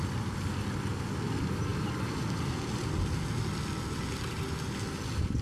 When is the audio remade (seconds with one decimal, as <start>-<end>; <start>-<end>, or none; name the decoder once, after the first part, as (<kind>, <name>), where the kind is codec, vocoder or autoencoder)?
1.7-2.5 (vocoder, BigVGAN v2)